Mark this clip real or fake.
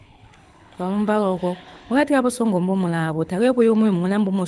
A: fake